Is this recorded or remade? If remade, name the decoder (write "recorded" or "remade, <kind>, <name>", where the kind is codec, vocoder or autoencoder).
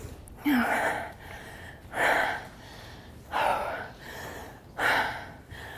remade, vocoder, BigVGAN v2